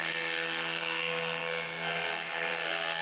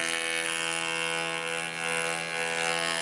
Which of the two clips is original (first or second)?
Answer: second